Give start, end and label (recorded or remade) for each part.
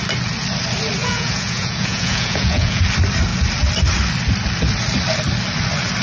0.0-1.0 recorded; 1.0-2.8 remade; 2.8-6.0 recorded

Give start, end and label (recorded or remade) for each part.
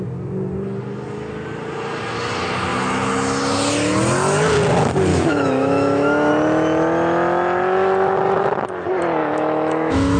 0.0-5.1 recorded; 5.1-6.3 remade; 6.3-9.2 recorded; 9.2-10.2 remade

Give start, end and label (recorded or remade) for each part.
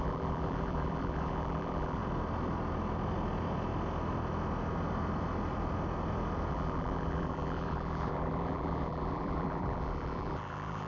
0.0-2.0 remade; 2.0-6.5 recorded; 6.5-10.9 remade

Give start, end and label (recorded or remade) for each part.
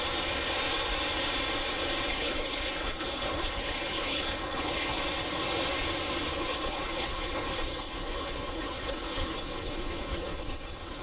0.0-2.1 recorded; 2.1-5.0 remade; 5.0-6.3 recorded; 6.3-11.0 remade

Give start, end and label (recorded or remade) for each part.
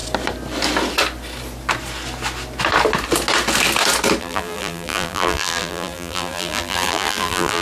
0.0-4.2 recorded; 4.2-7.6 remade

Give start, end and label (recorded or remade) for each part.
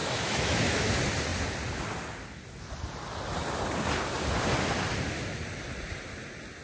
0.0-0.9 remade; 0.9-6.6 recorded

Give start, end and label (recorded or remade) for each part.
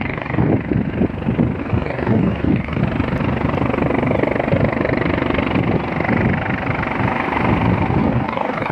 0.0-0.5 remade; 0.5-1.6 recorded; 1.6-2.8 remade; 2.8-8.0 recorded; 8.0-8.7 remade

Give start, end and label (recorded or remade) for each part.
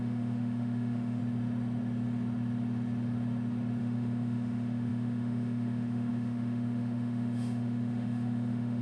0.0-1.2 remade; 1.2-3.8 recorded; 3.8-8.8 remade